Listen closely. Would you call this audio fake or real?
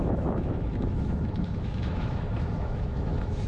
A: fake